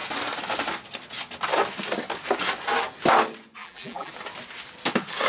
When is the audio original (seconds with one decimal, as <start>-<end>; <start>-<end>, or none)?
0.0-3.6; 4.1-5.3